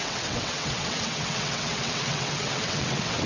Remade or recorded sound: remade